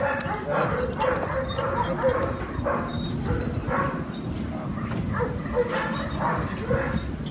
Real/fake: real